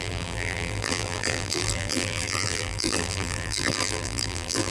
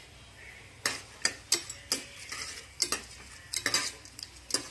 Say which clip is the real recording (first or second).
second